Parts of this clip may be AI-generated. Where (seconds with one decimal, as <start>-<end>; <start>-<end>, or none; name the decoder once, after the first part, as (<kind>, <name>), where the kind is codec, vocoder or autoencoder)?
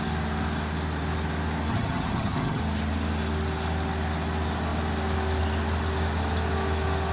1.7-2.6 (vocoder, HiFi-GAN)